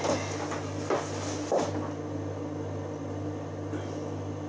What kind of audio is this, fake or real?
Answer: real